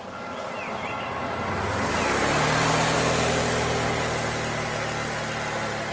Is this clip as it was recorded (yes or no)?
yes